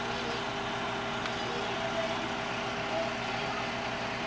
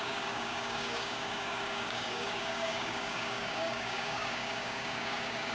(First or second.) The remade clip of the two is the second